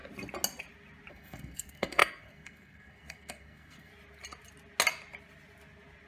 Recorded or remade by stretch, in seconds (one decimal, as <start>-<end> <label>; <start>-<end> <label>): 0.0-1.1 recorded; 1.1-3.9 remade; 3.9-6.1 recorded